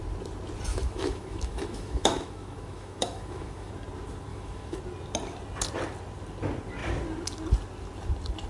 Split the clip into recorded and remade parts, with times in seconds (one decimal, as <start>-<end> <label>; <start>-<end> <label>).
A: 0.0-0.7 recorded; 0.7-3.7 remade; 3.7-4.3 recorded; 4.3-4.8 remade; 4.8-8.5 recorded